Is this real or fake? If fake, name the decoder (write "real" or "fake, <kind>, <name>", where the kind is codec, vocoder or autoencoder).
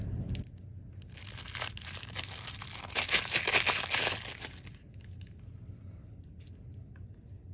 real